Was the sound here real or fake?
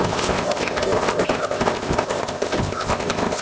fake